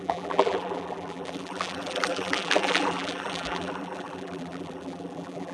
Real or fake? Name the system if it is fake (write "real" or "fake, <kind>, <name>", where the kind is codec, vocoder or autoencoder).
fake, vocoder, BigVGAN v2